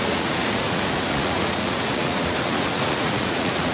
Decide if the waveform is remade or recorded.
remade